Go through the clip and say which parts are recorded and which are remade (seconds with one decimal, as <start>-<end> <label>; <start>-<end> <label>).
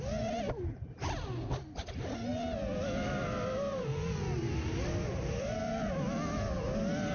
0.0-7.1 recorded